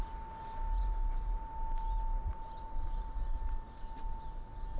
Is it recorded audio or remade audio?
recorded